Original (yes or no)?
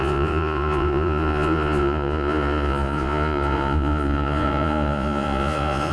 no